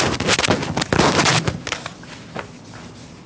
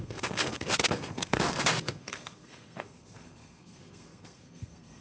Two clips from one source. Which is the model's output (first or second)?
second